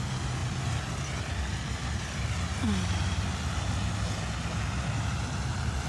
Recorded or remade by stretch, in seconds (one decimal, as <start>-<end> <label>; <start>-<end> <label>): 0.0-5.9 recorded